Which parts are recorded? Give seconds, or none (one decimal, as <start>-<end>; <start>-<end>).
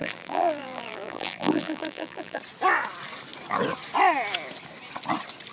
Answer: 2.4-5.5